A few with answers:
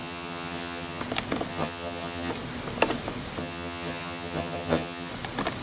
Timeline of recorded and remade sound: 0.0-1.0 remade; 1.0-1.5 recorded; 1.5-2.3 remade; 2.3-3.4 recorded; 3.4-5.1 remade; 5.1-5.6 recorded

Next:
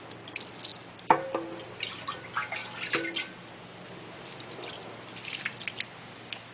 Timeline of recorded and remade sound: 0.0-6.5 recorded

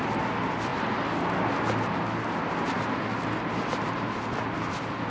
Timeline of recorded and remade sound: 0.0-5.1 recorded

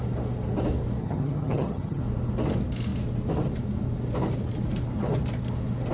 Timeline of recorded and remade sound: 0.0-1.0 recorded; 1.0-2.0 remade; 2.0-5.9 recorded

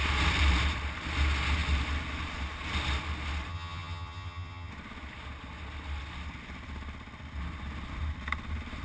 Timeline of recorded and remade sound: 0.0-3.5 recorded; 3.5-4.7 remade; 4.7-8.8 recorded